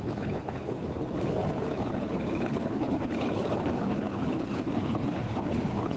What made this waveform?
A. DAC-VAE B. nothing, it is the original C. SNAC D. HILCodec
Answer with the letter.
D